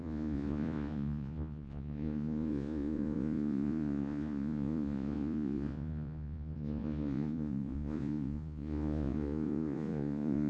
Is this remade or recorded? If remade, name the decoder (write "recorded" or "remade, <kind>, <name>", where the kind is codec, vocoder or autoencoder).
remade, vocoder, Vocos